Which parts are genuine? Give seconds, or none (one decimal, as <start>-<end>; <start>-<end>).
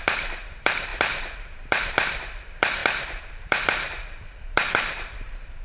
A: none